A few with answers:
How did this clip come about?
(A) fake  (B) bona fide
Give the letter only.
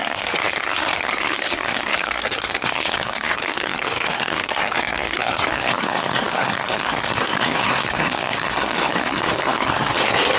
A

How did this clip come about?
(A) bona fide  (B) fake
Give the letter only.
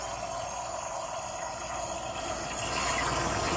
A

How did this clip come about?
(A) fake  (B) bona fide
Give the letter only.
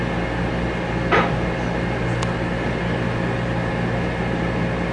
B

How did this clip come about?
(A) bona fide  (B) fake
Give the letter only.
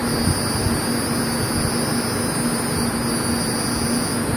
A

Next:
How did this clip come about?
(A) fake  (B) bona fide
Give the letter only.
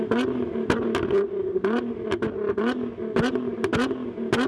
B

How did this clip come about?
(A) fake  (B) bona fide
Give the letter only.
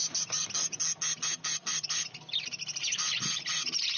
B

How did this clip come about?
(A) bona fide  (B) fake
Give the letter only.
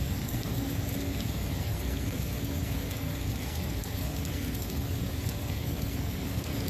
B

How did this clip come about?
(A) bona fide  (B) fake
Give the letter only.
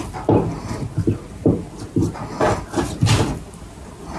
A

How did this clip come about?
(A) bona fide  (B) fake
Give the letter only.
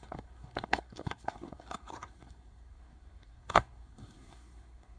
B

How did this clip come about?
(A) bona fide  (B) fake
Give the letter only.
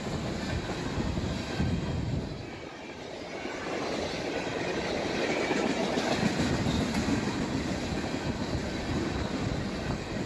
A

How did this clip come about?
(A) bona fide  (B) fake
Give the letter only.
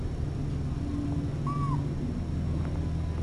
A